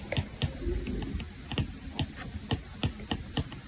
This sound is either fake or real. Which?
real